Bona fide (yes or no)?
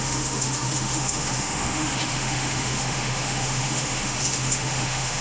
no